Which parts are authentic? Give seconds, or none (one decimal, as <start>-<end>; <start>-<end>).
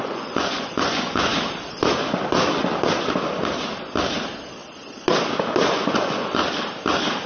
1.3-5.7; 6.4-7.3